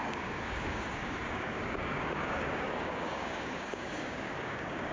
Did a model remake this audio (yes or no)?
yes